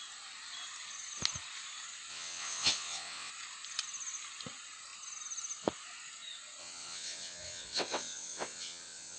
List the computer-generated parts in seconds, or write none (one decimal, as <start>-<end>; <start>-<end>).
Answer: 2.1-3.3; 6.6-9.2